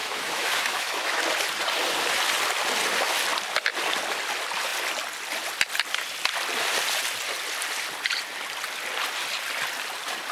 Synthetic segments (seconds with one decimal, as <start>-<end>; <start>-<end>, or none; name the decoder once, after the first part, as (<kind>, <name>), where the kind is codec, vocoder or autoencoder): 0.0-1.2 (autoencoder, DAC-VAE)